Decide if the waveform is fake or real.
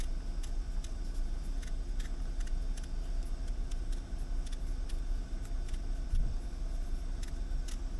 real